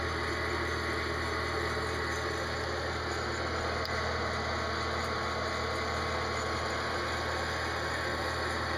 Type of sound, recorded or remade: recorded